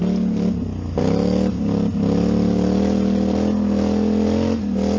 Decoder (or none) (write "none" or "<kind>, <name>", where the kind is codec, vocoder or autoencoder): none